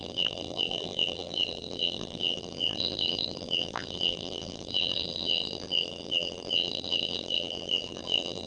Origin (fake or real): fake